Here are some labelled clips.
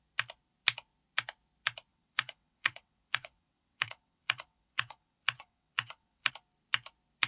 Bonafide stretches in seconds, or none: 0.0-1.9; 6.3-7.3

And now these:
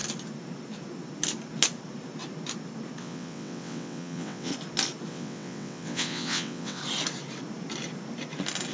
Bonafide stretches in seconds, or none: 0.0-3.0; 4.5-5.1; 6.8-8.7